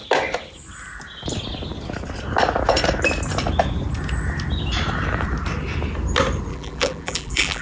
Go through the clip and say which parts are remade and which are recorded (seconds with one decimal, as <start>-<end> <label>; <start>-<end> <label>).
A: 0.0-6.5 recorded; 6.5-7.6 remade